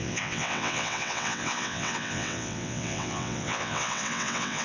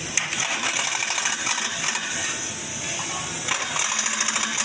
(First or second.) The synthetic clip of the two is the first